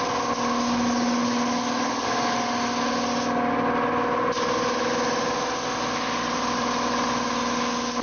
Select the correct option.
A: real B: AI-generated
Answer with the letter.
A